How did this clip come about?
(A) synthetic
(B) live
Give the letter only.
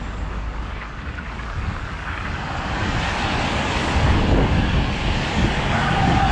A